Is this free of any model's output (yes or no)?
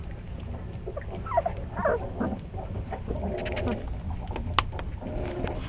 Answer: yes